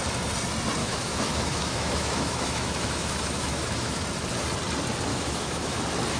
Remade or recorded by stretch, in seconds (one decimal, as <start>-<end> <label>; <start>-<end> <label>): 0.0-0.8 recorded; 0.8-4.0 remade; 4.0-5.1 recorded; 5.1-5.8 remade; 5.8-6.2 recorded